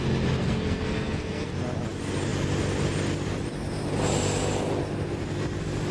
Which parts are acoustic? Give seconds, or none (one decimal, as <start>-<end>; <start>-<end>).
0.0-0.4; 1.5-5.9